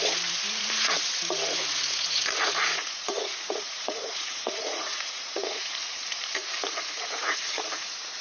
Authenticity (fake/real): fake